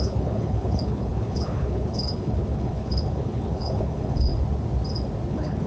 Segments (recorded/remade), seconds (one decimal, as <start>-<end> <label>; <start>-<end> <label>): 0.0-4.3 remade; 4.3-5.3 recorded; 5.3-5.7 remade